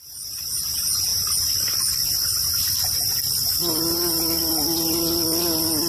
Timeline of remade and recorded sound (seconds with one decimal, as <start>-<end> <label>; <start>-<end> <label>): 0.0-5.9 recorded